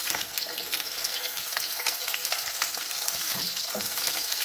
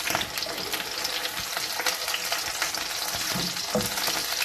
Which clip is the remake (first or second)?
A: first